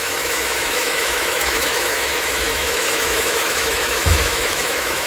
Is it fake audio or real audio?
fake